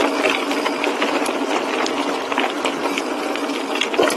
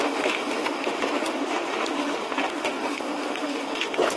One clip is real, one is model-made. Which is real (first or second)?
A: first